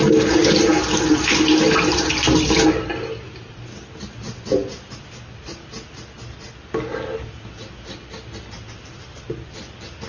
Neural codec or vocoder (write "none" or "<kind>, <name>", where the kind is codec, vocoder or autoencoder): none